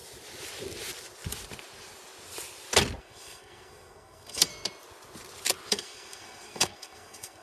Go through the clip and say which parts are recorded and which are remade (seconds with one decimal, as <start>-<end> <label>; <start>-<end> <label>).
0.0-3.0 recorded; 3.0-4.5 remade; 4.5-5.7 recorded; 5.7-7.4 remade